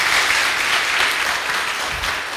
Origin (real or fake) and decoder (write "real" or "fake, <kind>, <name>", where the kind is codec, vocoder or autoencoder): real